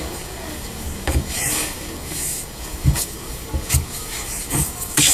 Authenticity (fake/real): fake